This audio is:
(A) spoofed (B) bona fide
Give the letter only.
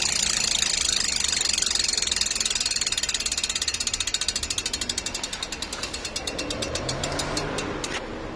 B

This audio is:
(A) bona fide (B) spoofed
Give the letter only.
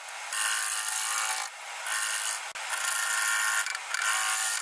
A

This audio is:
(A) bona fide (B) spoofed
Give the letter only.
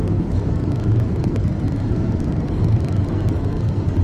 B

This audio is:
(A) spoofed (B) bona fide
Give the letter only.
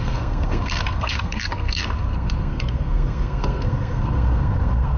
A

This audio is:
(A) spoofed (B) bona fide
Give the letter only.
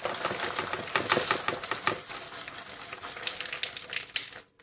B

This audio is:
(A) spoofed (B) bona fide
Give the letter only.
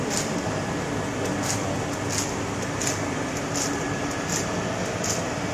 B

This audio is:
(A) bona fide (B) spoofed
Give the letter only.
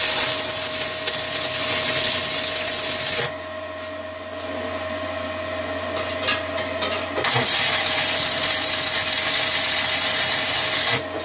A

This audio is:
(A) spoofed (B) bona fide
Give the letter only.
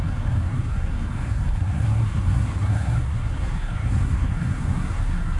A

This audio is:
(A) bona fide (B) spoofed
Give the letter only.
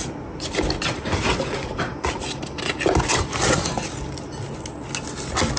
A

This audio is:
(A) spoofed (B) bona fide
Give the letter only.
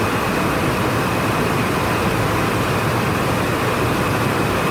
B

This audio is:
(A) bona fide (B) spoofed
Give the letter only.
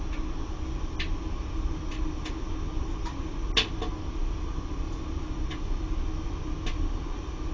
A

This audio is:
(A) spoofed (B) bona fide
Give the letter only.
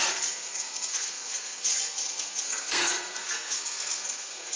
A